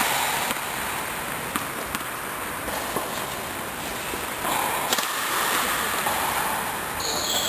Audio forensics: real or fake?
real